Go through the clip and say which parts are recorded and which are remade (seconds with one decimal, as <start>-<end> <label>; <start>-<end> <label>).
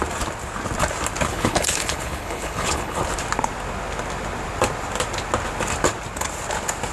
0.0-1.3 recorded; 1.3-3.0 remade; 3.0-6.9 recorded